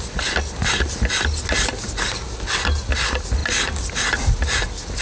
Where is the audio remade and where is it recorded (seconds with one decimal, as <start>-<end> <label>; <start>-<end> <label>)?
0.0-5.0 recorded